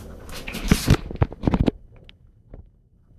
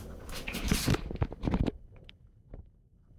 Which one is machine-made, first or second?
second